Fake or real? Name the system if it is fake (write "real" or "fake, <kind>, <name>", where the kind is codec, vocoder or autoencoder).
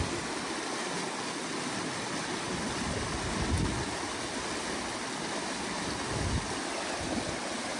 real